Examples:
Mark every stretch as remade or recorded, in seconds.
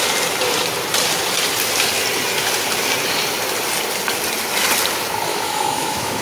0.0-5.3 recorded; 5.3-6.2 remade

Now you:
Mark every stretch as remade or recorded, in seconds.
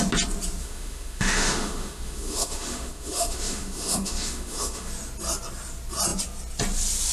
0.0-0.6 recorded; 0.6-4.9 remade; 4.9-7.1 recorded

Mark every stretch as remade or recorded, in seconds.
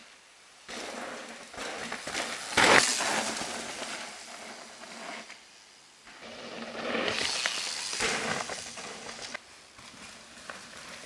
0.0-11.1 recorded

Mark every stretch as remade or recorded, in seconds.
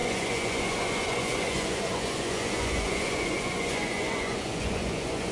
0.0-5.3 remade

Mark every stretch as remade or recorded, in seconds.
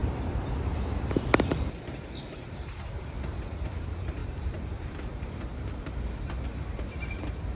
0.0-1.5 recorded; 1.5-7.5 remade